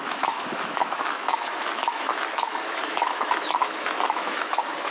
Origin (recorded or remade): remade